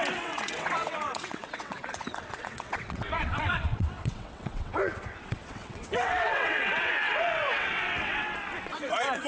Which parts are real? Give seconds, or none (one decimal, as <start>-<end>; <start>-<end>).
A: none